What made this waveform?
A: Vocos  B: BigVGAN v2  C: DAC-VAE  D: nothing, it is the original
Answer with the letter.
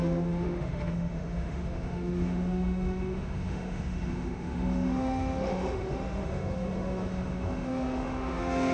C